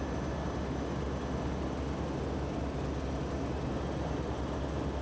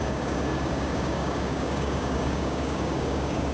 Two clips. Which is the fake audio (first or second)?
second